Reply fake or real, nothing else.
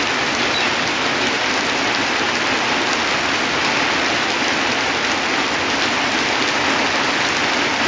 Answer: real